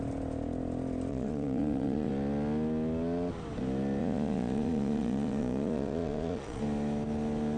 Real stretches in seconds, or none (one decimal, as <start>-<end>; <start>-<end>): 0.0-1.1; 2.1-4.0; 6.6-7.6